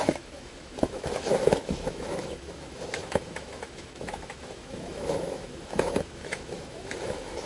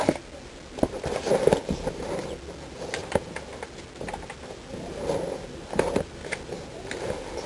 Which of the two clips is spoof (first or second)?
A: first